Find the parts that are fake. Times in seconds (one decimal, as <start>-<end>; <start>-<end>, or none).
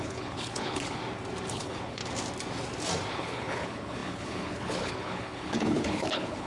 0.0-1.0; 1.5-2.0; 3.1-6.5